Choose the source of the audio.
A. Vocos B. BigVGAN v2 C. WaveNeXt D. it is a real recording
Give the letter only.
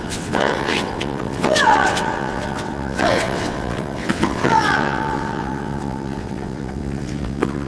C